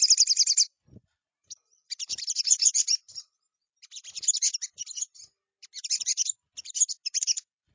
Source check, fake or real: real